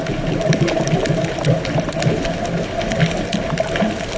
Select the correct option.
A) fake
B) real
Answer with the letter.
B